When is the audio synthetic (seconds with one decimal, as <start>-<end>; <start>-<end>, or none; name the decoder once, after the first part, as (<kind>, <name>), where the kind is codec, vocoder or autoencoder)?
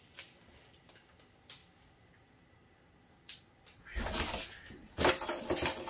none